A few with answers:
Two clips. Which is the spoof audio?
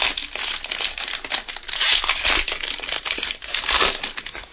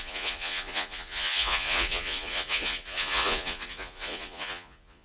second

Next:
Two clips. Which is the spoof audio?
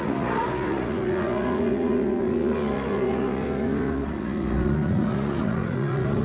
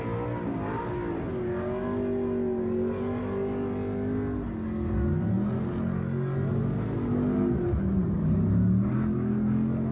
first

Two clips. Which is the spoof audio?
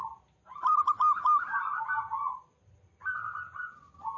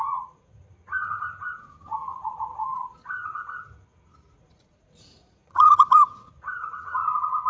second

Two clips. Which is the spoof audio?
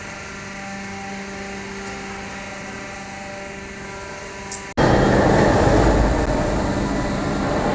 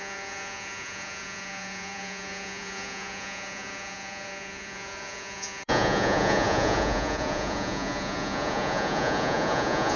second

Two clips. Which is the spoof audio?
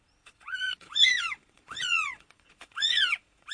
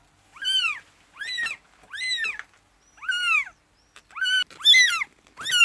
first